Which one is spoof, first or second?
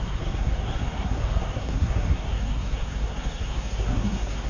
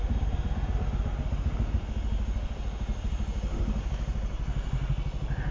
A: first